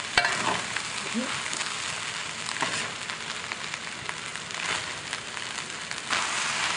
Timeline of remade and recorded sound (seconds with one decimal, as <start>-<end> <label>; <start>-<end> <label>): 0.0-6.8 recorded